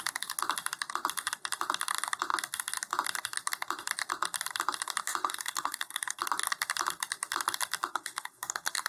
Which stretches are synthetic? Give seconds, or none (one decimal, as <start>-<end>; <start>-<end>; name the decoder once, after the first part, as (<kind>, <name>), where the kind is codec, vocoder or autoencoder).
5.2-6.2 (codec, SNAC); 7.9-8.9